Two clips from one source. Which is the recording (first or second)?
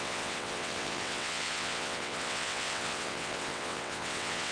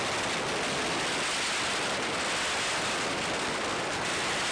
second